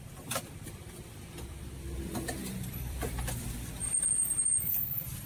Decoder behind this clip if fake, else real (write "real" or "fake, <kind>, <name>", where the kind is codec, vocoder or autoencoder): fake, vocoder, BigVGAN v2